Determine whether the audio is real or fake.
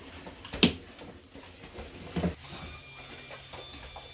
real